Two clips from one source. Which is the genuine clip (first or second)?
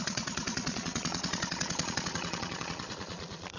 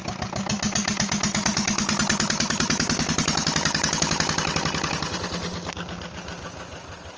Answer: second